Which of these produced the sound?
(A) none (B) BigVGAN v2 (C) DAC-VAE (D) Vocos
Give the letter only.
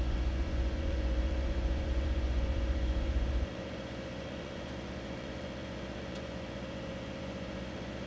D